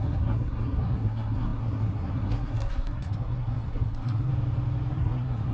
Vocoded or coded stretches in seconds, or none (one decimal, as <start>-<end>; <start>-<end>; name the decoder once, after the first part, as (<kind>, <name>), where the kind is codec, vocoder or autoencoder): 0.0-4.3 (codec, SNAC); 4.9-5.5